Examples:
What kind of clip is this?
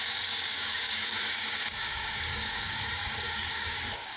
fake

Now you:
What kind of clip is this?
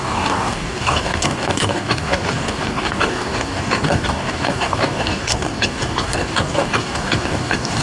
fake